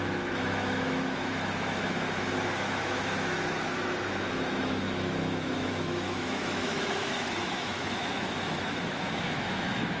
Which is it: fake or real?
fake